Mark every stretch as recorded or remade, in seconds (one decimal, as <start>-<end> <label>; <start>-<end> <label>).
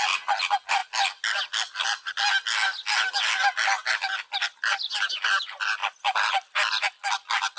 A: 0.0-7.6 recorded